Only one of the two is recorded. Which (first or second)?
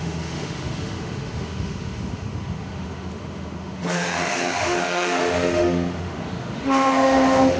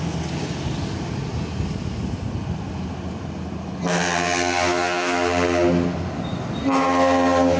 second